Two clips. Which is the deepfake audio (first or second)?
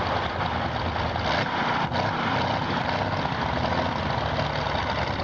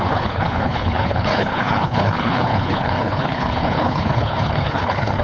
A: second